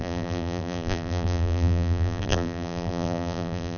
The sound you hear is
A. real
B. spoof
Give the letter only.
B